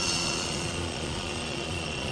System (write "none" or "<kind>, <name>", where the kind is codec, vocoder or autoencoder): vocoder, Vocos